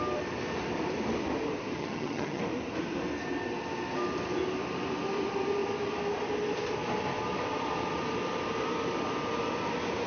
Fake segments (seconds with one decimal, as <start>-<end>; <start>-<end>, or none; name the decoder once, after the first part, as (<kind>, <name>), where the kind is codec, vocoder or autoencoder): 1.8-2.4 (vocoder, HiFi-GAN)